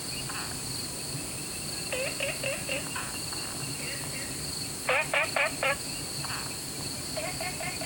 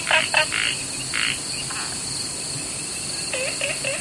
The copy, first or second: second